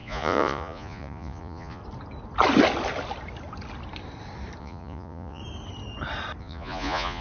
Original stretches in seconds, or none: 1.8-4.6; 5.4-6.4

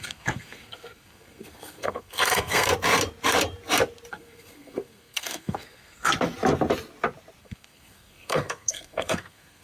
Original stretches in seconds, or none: 2.7-4.1; 6.1-7.4

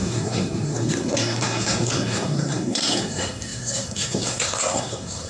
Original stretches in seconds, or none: none

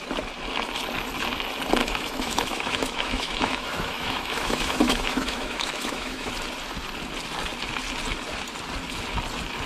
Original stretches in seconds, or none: 0.0-1.8; 6.3-9.7

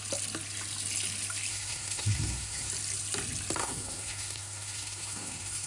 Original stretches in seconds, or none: 0.0-1.5; 2.7-3.6